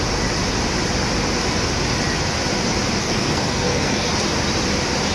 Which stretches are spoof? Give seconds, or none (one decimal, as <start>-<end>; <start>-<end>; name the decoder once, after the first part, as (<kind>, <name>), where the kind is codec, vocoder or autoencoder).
3.0-4.1 (codec, SNAC)